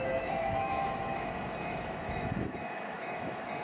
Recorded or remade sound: remade